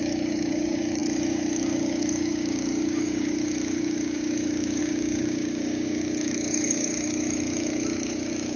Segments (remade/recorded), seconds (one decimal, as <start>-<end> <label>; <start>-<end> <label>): 0.0-8.6 remade